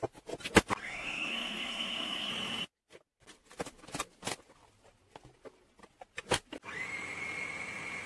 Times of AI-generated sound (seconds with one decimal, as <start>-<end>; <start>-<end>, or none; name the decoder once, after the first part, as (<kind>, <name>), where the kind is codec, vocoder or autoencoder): 0.8-2.3 (codec, SNAC)